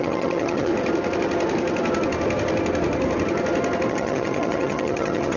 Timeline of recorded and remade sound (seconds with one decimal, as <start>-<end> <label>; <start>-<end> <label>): 0.0-0.7 remade; 0.7-3.9 recorded; 3.9-5.4 remade